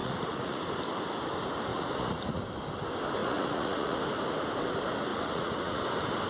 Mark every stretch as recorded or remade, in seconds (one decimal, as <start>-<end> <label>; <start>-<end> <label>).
0.0-0.6 remade; 0.6-1.7 recorded; 1.7-2.4 remade; 2.4-3.2 recorded; 3.2-4.0 remade; 4.0-5.1 recorded; 5.1-5.8 remade; 5.8-6.3 recorded